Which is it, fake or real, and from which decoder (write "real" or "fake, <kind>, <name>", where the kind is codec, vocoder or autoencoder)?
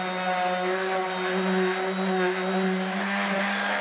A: real